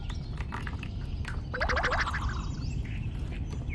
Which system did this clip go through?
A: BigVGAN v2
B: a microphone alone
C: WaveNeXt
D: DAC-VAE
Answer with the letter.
B